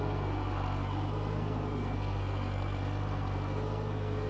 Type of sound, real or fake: fake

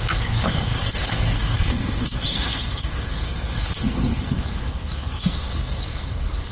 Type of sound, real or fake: fake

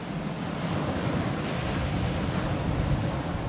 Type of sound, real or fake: real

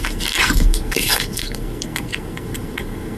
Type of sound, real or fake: fake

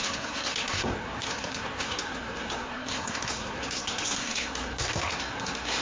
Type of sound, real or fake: fake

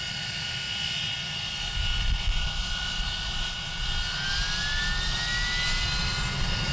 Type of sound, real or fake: real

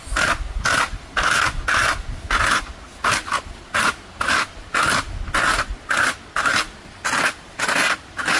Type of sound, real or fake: real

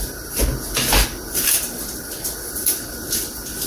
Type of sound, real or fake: real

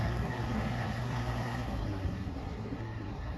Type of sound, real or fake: fake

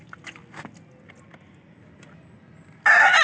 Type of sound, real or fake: real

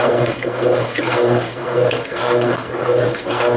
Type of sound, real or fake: fake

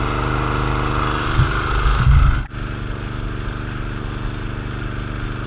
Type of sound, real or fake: real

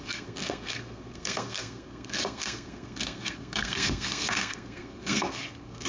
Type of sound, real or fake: fake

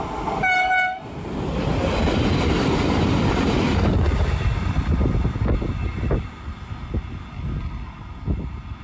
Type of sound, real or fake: real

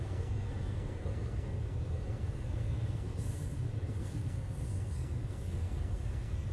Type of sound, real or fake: fake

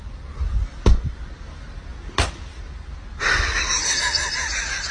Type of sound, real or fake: real